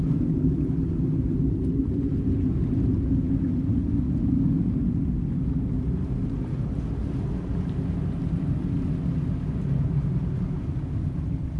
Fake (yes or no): no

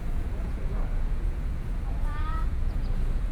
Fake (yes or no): yes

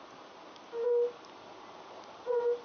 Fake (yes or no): no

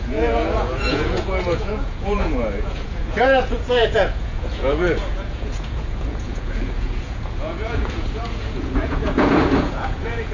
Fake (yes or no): yes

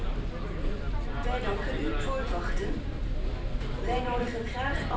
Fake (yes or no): no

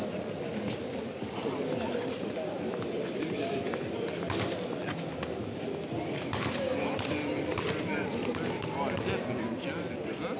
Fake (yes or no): no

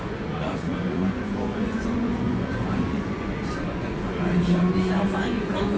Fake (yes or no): yes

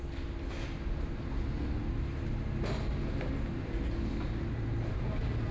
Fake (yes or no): no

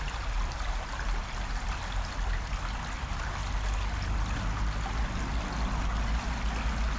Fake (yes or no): no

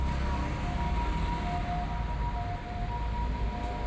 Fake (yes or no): no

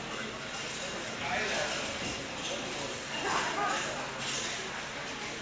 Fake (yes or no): no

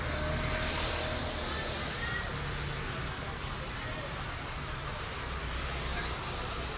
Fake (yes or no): no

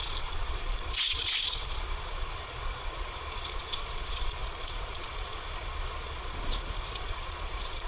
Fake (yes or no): yes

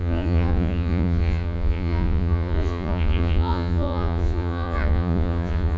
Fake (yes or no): yes